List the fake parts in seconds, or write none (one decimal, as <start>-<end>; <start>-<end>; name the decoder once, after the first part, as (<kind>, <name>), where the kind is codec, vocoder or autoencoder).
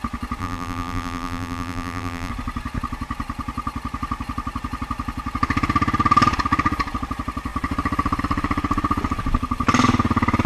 0.4-2.3 (vocoder, BigVGAN v2)